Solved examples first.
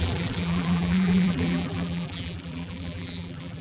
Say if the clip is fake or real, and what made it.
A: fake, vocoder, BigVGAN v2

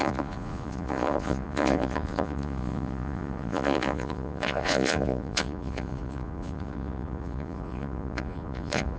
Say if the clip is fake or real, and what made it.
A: fake, vocoder, Vocos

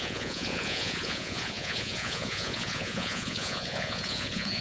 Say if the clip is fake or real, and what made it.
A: fake, vocoder, Vocos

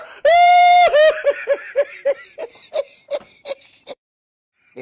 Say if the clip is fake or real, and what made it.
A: fake, vocoder, BigVGAN v2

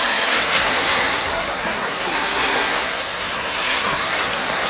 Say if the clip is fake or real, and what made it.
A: fake, codec, SNAC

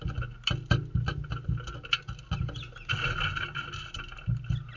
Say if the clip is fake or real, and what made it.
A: real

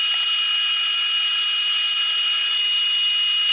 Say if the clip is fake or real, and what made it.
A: real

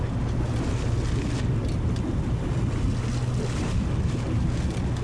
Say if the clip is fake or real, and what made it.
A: real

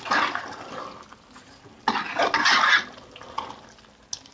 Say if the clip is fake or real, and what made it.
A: real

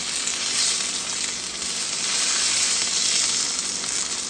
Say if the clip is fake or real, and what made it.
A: real